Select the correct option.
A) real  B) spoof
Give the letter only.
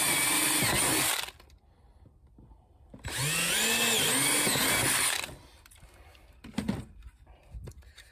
A